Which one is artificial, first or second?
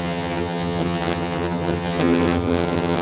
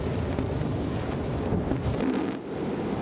first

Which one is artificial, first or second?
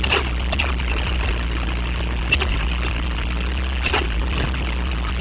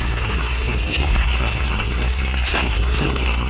second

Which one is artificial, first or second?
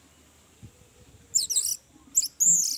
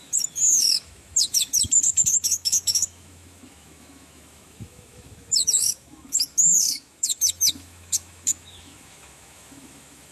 second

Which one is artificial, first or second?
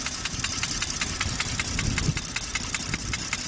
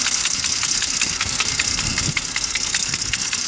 second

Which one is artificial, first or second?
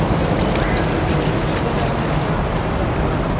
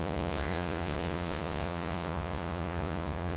second